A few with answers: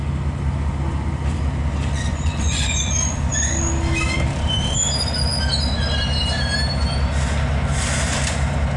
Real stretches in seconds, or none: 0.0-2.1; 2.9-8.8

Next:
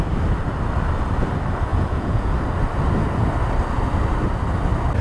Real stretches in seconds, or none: 0.0-1.7; 2.3-5.0

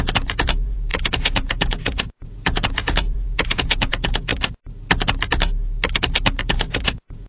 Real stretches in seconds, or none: 4.3-6.4

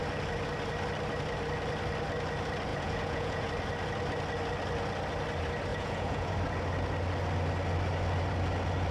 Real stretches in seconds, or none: 0.0-2.7; 3.5-5.7; 6.3-8.9